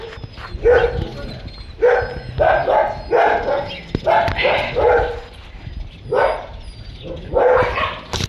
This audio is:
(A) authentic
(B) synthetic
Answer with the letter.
A